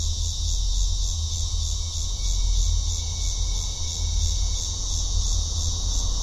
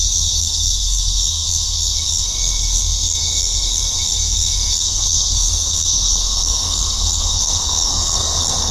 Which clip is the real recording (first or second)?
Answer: first